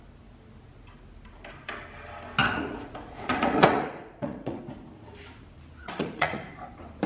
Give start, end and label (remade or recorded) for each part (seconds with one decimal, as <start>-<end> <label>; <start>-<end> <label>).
0.0-2.4 recorded; 2.4-4.6 remade; 4.6-5.8 recorded; 5.8-6.5 remade; 6.5-7.1 recorded